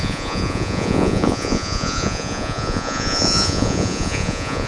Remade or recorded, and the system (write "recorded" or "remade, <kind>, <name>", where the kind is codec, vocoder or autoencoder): remade, vocoder, Vocos